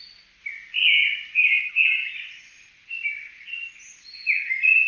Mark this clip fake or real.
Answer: real